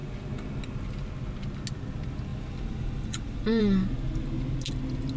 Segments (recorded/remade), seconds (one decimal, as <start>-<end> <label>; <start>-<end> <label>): 0.0-2.3 recorded; 2.3-3.6 remade; 3.6-5.2 recorded